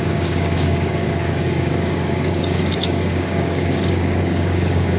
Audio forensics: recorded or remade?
remade